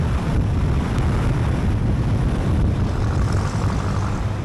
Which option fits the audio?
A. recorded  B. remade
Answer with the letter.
B